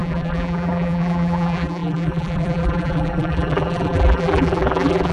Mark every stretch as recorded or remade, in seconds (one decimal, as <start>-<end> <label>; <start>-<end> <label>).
0.0-5.1 remade